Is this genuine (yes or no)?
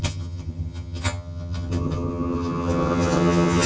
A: no